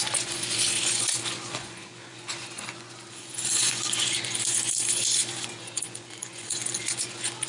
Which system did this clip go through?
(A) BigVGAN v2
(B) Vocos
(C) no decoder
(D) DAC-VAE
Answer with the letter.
B